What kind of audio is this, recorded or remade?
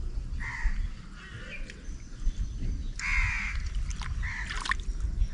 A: recorded